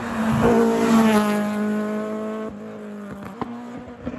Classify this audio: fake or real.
real